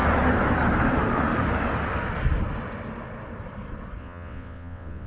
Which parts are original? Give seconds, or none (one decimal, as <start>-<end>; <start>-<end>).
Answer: 0.0-4.0